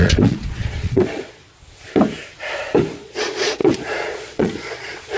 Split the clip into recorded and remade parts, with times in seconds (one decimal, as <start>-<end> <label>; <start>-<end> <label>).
0.0-1.4 remade; 1.4-3.0 recorded; 3.0-5.2 remade